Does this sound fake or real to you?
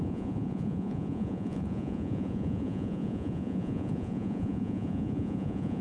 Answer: fake